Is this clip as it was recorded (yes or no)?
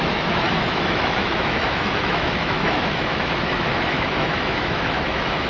no